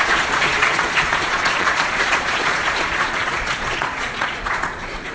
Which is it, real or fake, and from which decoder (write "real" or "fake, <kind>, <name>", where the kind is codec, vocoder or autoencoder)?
fake, vocoder, Vocos